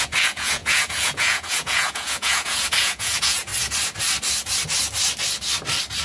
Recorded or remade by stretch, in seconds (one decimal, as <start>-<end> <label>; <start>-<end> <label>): 0.0-3.5 remade; 3.5-6.0 recorded